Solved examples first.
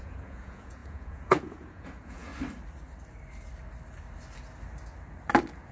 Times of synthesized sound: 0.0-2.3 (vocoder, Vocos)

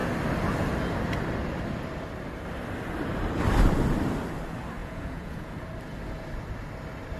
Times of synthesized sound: 4.8-5.5 (vocoder, Vocos)

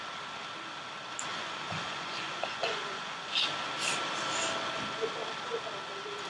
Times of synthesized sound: 1.3-3.4 (vocoder, Vocos)

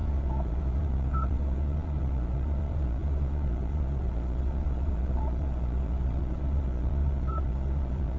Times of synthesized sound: 0.0-8.2 (vocoder, Vocos)

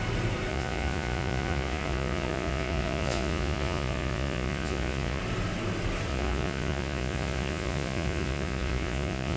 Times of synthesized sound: 0.5-5.2 (vocoder, Vocos); 6.1-9.4

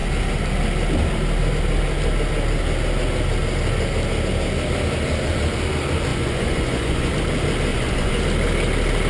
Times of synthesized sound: 6.1-7.1 (vocoder, Vocos); 7.7-8.2

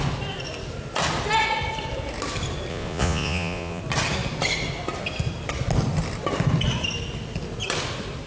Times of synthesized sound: 2.7-3.8 (vocoder, Vocos)

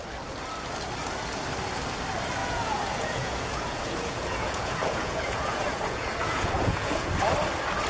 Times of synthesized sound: 2.4-7.1 (vocoder, Vocos)